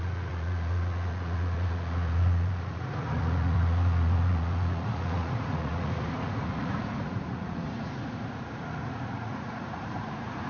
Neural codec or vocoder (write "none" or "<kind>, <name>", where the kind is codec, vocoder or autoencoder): vocoder, Vocos